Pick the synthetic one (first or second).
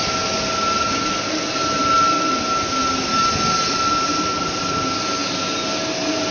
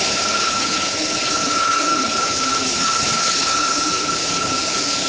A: second